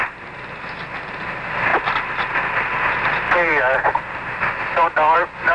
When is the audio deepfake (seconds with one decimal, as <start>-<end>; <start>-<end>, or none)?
0.0-1.7; 2.4-5.5